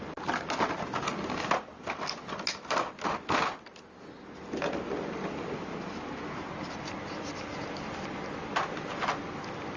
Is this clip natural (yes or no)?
yes